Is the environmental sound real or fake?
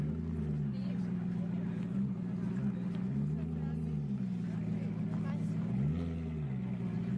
real